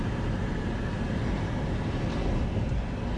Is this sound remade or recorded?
recorded